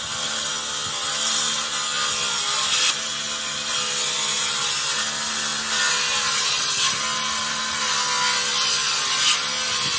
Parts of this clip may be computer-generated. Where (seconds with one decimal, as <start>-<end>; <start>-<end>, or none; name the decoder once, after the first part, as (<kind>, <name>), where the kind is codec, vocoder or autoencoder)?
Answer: none